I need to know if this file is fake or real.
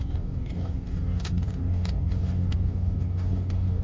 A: fake